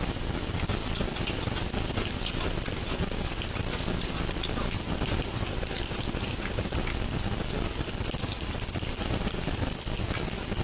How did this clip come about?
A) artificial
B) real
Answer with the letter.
B